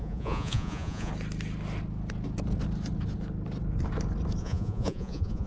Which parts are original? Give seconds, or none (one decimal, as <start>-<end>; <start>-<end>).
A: 1.1-4.4

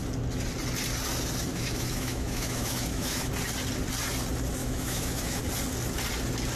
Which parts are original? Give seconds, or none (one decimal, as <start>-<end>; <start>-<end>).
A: 0.0-1.5; 3.3-4.6; 5.4-6.6

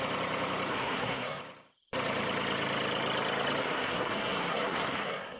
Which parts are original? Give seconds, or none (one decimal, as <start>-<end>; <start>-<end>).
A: 0.0-0.7; 1.4-3.6